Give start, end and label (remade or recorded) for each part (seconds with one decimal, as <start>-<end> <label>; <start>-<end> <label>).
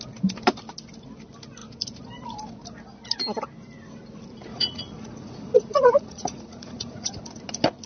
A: 0.0-4.5 recorded; 4.5-7.2 remade; 7.2-7.9 recorded